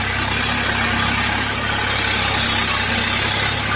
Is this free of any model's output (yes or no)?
yes